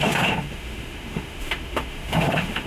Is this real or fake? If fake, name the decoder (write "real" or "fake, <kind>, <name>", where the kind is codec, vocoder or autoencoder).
fake, autoencoder, DAC-VAE